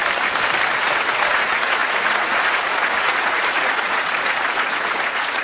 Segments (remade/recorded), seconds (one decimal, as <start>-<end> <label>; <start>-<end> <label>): 0.0-0.8 recorded; 0.8-5.4 remade